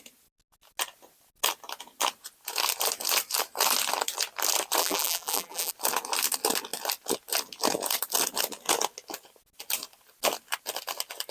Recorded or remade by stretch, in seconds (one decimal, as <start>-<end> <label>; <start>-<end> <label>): 0.0-4.8 recorded; 4.8-5.7 remade; 5.7-11.3 recorded

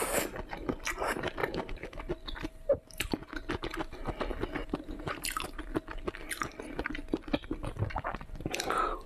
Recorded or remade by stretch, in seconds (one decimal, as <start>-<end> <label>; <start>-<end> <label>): 0.0-1.4 recorded; 1.4-2.0 remade; 2.0-4.6 recorded; 4.6-5.6 remade; 5.6-9.1 recorded

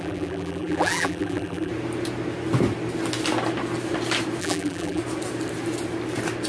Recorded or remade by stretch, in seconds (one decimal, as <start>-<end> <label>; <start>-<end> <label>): 0.0-1.7 remade; 1.7-4.4 recorded; 4.4-5.0 remade; 5.0-6.5 recorded

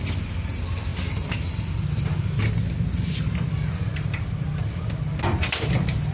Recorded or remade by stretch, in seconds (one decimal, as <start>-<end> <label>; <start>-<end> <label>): 0.0-6.1 recorded

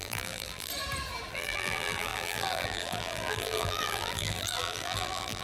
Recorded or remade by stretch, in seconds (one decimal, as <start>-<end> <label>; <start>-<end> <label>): 0.0-0.7 remade; 0.7-1.3 recorded; 1.3-5.4 remade

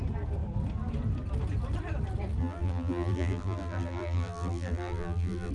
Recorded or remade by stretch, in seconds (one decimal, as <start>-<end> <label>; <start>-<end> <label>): 0.0-2.4 recorded; 2.4-5.5 remade